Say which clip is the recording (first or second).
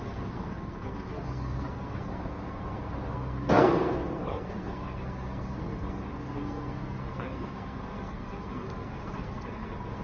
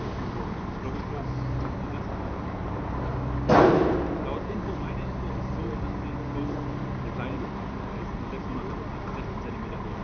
second